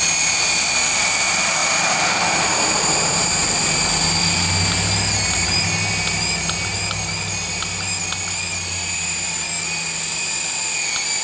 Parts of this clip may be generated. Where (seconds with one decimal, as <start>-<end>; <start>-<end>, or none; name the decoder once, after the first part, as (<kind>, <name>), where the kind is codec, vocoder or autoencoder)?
none

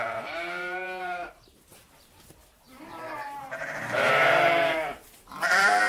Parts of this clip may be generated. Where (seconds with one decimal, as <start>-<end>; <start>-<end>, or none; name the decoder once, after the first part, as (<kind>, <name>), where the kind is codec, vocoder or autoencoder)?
0.0-5.9 (vocoder, BigVGAN v2)

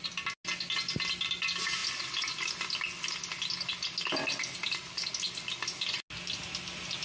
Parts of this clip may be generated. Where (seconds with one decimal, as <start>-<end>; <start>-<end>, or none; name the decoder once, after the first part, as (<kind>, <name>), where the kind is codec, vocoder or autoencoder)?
none

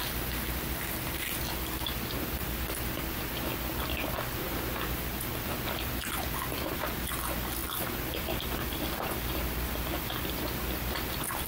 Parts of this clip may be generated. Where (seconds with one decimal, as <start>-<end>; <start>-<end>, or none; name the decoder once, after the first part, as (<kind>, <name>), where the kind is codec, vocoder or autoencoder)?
7.6-9.9 (vocoder, BigVGAN v2)

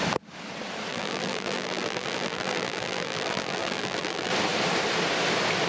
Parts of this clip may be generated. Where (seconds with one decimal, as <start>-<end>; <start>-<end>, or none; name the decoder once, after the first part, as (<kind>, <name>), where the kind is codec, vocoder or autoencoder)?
0.9-4.3 (vocoder, BigVGAN v2)

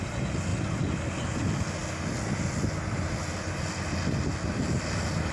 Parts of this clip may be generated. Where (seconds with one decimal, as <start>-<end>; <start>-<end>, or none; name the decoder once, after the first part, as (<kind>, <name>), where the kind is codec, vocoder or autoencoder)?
0.5-1.2 (vocoder, BigVGAN v2)

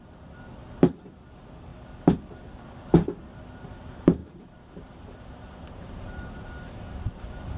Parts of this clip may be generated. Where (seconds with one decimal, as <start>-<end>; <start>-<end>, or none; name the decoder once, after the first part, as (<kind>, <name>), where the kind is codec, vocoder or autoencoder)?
4.2-5.9 (vocoder, BigVGAN v2)